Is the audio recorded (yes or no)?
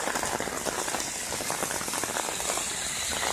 yes